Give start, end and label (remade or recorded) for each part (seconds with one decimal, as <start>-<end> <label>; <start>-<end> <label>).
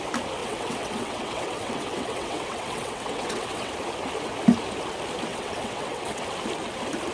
0.0-0.4 recorded; 0.4-3.7 remade; 3.7-5.3 recorded; 5.3-6.3 remade; 6.3-7.1 recorded